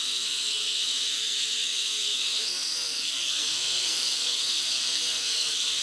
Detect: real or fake fake